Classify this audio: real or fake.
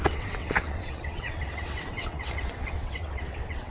fake